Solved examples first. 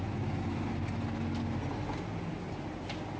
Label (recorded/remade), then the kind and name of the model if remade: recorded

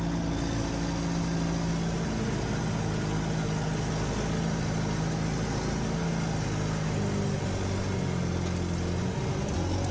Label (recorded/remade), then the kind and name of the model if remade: recorded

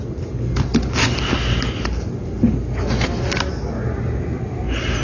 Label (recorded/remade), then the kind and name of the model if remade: recorded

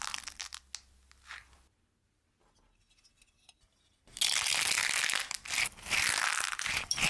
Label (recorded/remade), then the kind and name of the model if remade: recorded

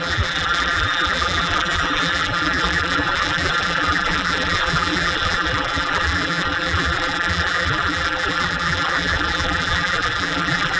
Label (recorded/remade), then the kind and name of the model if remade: remade, vocoder, BigVGAN v2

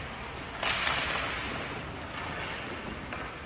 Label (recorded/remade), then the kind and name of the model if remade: recorded